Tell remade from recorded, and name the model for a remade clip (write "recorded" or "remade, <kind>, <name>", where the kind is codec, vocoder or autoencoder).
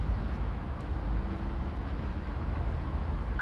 remade, autoencoder, DAC-VAE